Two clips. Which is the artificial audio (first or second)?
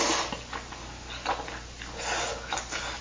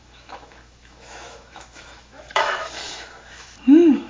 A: second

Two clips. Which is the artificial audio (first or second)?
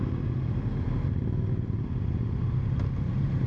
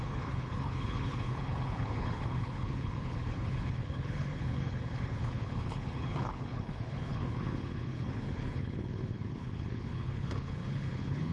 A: second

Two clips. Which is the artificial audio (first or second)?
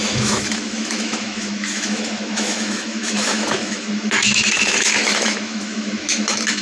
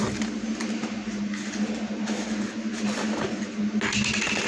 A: first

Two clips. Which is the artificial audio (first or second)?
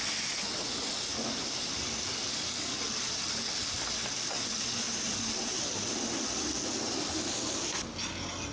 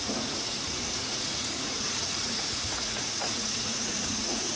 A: second